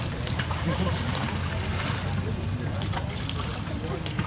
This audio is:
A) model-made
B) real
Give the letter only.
B